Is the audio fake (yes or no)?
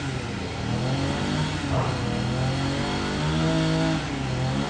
no